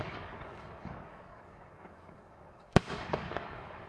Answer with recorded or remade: remade